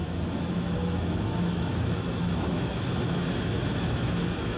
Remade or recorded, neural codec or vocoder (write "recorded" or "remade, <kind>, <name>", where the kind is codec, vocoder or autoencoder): remade, autoencoder, DAC-VAE